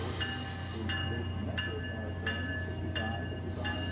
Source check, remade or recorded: recorded